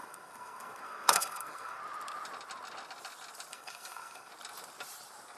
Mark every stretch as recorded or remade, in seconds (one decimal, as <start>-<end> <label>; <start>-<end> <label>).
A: 0.0-1.8 remade; 1.8-3.5 recorded; 3.5-4.3 remade; 4.3-5.4 recorded